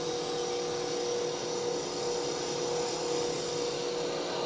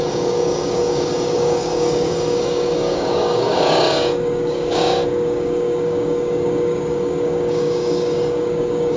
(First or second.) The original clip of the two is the first